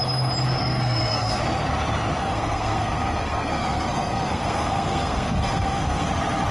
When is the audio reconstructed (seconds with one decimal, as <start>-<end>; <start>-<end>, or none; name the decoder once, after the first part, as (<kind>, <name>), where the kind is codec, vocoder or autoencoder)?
0.6-1.4 (codec, SNAC); 2.2-6.1